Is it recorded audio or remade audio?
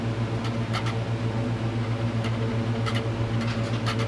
recorded